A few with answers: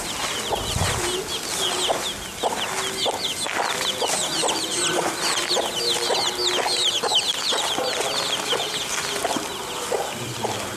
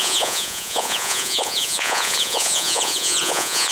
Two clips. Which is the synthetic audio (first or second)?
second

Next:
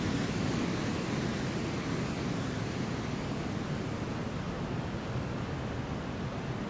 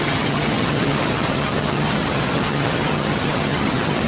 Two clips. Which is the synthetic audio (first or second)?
second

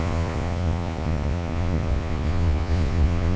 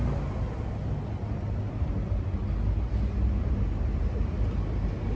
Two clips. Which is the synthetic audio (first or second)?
first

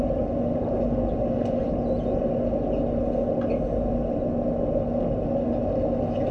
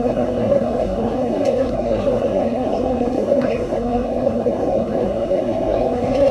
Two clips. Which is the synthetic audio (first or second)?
second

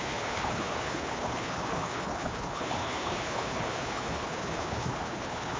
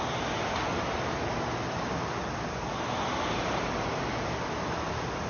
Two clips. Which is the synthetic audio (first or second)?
first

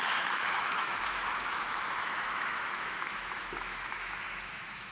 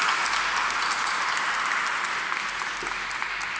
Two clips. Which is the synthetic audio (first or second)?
first